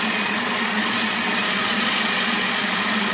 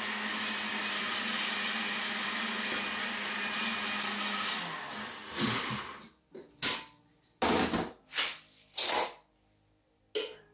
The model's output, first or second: first